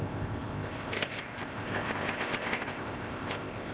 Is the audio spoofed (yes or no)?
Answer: yes